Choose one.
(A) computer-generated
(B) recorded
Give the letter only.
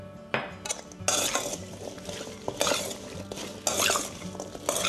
B